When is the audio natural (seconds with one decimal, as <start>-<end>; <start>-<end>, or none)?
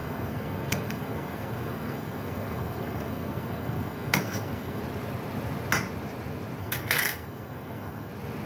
4.8-6.6; 8.1-8.5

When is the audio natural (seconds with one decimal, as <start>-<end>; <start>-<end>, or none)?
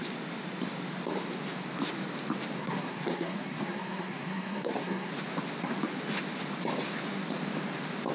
0.0-2.6; 5.1-8.1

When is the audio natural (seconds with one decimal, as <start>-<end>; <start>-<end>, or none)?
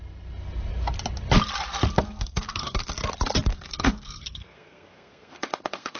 0.0-1.9; 2.9-3.5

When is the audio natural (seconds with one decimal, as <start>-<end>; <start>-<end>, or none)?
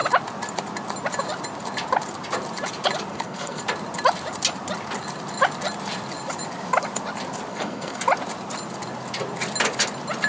0.0-3.1; 3.6-7.5; 8.0-10.3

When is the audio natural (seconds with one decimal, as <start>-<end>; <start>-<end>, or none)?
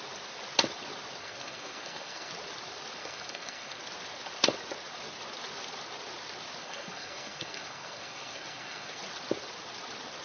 0.0-1.2; 2.3-3.0; 3.8-6.6; 9.0-10.2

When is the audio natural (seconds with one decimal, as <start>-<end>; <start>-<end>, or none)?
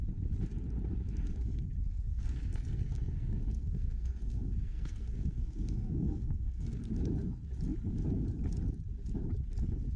0.0-2.1; 6.8-10.0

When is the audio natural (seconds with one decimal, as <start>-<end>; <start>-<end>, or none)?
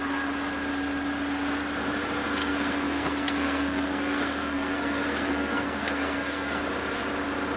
0.0-2.4; 6.6-7.6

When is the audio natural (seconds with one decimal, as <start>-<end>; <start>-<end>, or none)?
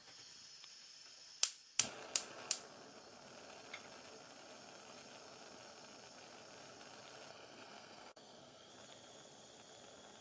0.0-7.3; 8.7-10.2